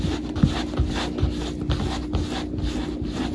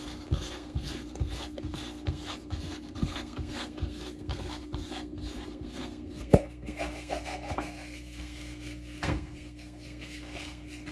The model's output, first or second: second